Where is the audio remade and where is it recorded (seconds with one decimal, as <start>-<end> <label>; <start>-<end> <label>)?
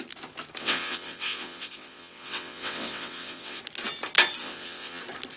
0.0-0.6 recorded; 0.6-3.6 remade; 3.6-4.4 recorded; 4.4-5.0 remade; 5.0-5.4 recorded